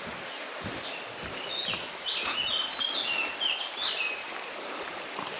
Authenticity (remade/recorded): recorded